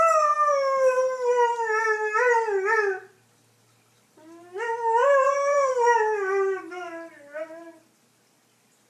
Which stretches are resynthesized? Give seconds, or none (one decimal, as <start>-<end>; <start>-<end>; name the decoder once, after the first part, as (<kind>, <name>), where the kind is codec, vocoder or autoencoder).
5.0-5.7 (vocoder, Vocos)